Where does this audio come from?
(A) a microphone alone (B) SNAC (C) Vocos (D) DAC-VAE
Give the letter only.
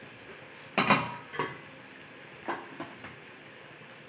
A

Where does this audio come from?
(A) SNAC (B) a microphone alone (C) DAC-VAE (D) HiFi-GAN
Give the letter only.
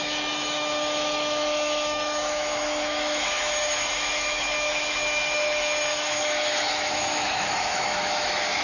C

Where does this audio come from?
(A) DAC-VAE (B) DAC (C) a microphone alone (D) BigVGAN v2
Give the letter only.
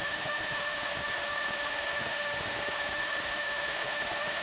A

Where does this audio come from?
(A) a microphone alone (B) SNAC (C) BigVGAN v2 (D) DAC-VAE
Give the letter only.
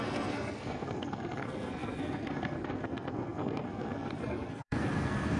B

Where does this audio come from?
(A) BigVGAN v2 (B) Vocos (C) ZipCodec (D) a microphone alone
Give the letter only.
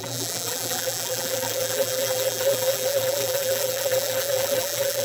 A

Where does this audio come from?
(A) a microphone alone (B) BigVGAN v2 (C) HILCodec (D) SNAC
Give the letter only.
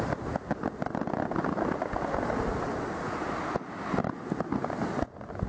A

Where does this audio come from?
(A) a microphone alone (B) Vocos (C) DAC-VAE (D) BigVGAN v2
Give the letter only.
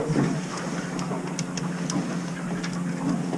A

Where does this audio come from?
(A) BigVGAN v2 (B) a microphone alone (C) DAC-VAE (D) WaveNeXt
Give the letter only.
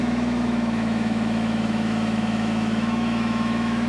C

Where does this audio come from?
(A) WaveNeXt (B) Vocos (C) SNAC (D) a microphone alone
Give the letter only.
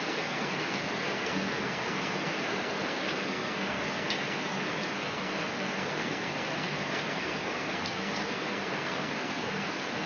C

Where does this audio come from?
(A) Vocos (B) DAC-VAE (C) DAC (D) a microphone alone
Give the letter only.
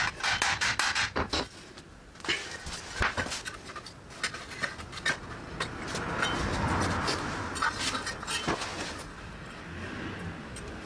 D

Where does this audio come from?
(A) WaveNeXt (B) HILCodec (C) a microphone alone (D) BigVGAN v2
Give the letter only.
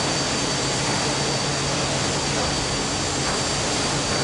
C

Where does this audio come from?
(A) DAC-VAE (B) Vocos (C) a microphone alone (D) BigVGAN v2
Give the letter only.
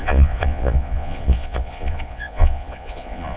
B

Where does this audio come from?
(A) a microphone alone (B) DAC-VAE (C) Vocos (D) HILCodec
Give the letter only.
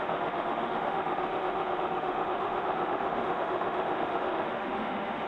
B